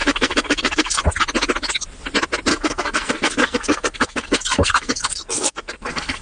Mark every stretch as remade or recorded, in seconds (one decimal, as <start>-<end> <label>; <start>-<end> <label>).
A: 0.0-1.0 remade; 1.0-2.5 recorded; 2.5-6.2 remade